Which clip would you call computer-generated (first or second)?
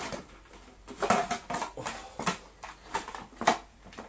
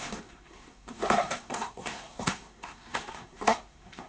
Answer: second